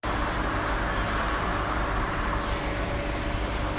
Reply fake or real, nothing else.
real